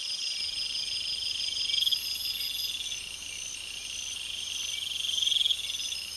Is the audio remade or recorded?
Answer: recorded